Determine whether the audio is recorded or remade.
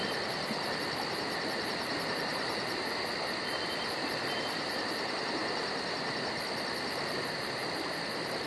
recorded